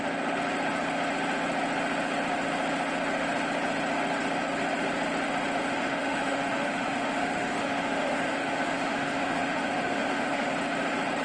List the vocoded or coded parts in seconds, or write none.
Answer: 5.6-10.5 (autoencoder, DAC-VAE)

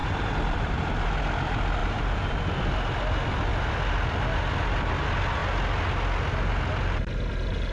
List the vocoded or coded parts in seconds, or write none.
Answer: 0.0-1.1 (vocoder, BigVGAN v2); 1.8-2.4

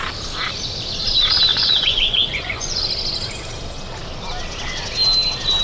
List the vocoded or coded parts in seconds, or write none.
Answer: 1.5-2.8 (vocoder, Vocos)

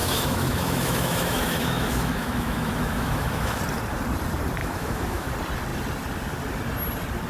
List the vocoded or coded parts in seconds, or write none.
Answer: 0.0-3.6 (autoencoder, DAC-VAE); 4.6-5.3

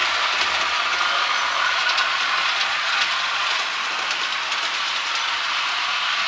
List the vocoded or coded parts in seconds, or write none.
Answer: 1.8-3.7 (vocoder, Vocos)

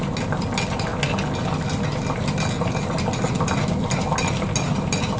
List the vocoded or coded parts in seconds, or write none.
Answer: none

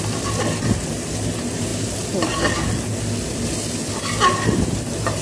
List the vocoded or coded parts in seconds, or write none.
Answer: none

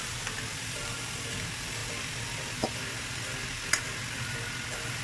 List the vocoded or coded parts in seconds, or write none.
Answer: none